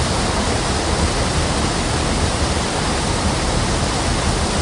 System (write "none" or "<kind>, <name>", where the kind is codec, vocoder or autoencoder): none